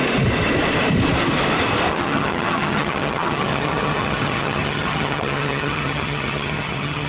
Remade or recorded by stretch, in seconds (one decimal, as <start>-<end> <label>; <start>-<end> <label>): 0.0-1.9 recorded; 1.9-7.1 remade